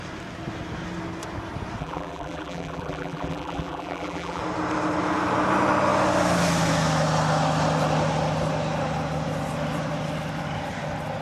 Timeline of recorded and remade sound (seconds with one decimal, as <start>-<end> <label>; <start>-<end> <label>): 0.0-1.8 recorded; 1.8-4.4 remade; 4.4-11.2 recorded